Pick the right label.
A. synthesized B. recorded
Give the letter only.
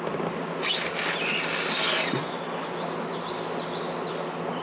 B